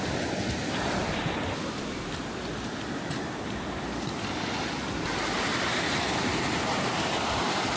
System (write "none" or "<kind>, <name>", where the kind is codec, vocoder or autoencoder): none